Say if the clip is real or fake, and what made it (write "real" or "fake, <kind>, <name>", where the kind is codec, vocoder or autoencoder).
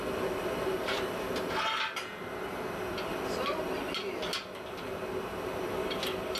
real